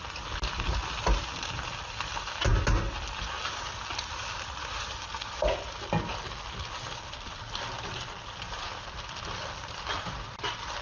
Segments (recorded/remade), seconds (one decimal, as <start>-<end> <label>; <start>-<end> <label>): 0.0-10.8 recorded